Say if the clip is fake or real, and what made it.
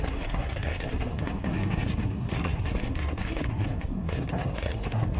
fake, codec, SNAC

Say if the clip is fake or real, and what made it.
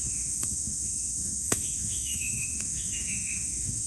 fake, autoencoder, DAC-VAE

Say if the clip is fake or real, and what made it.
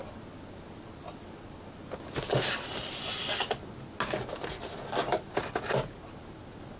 real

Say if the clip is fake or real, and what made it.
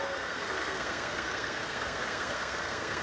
fake, codec, SNAC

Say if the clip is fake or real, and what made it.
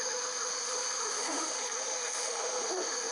fake, autoencoder, DAC-VAE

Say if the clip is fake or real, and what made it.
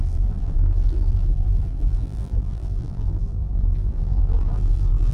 fake, vocoder, BigVGAN v2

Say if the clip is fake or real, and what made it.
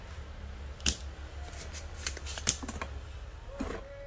real